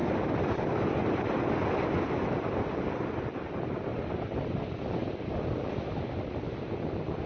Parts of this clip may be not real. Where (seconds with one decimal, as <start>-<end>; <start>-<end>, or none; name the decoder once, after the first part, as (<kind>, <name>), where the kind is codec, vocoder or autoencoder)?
none